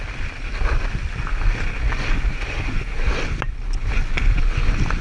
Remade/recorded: recorded